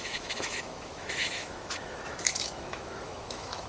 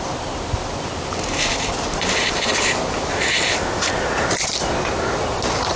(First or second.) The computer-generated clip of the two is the first